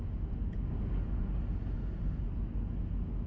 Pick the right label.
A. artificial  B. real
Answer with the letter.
B